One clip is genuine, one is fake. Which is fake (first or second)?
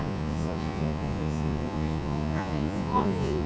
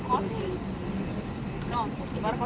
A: first